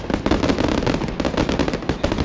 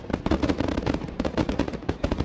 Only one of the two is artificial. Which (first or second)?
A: second